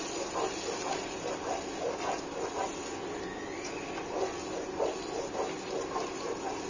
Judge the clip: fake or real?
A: real